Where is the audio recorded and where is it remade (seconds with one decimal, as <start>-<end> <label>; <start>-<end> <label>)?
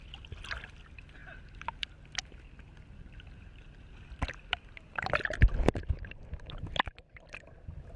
0.0-8.0 recorded